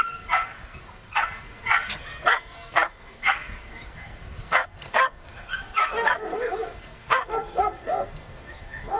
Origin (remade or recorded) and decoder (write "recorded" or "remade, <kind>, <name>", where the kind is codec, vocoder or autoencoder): remade, codec, SNAC